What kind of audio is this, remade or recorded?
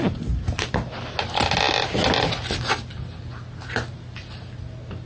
recorded